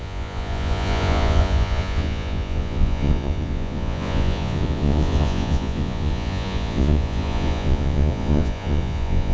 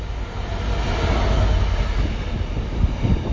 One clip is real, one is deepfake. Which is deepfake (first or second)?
first